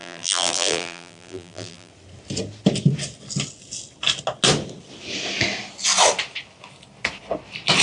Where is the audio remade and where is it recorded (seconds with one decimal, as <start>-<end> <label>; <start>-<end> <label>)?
0.0-1.9 remade; 1.9-7.8 recorded